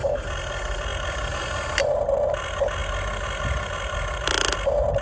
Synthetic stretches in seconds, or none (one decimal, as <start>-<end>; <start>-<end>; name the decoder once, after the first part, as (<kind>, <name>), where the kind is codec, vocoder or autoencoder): none